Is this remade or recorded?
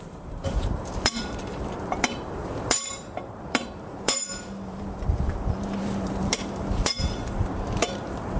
remade